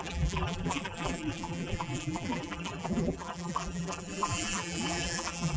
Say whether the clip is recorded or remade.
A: remade